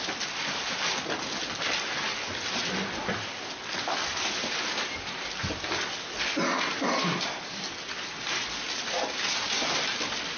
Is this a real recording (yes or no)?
yes